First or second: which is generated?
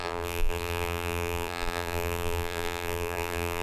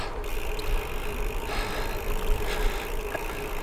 first